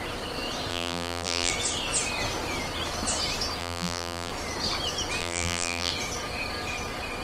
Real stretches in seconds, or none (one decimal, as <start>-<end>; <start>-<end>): 0.0-0.7; 1.5-3.6; 4.3-5.2; 5.9-7.2